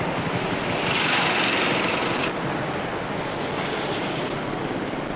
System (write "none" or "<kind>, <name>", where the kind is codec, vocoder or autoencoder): none